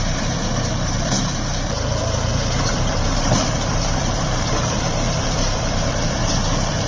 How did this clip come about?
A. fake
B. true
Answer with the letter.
A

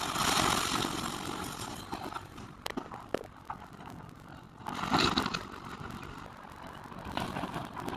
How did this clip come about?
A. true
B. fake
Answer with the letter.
B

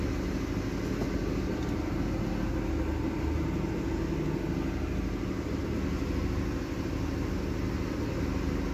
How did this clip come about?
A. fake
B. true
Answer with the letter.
B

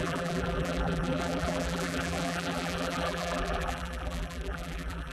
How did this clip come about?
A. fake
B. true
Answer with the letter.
A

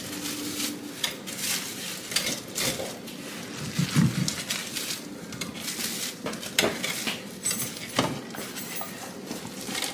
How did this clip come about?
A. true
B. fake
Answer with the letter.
A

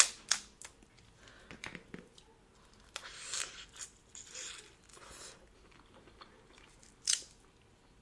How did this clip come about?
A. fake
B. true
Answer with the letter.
B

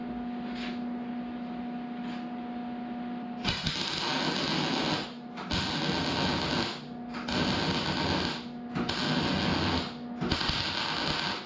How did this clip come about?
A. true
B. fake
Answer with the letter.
A